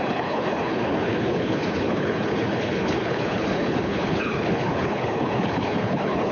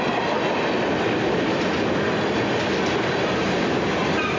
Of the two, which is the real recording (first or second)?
second